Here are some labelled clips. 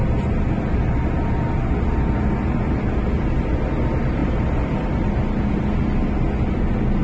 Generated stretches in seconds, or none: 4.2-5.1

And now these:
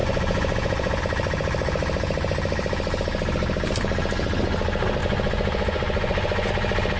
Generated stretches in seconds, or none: 0.0-1.0; 5.0-6.5

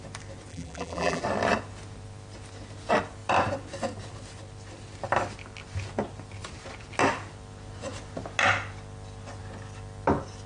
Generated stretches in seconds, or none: 0.5-1.2

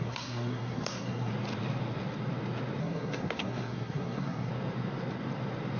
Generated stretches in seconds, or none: 0.0-1.3; 2.8-4.5